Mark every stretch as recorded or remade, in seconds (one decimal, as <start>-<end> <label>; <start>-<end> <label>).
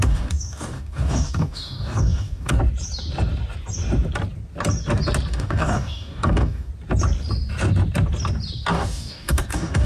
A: 0.0-2.6 remade; 2.6-5.3 recorded; 5.3-6.7 remade; 6.7-8.7 recorded; 8.7-9.9 remade